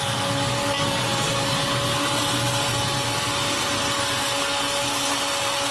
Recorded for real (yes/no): yes